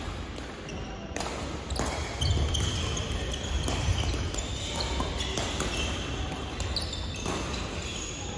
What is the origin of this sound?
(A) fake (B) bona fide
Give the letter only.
B